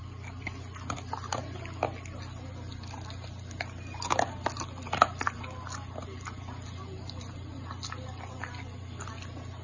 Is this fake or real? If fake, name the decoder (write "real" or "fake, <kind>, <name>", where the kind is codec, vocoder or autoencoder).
real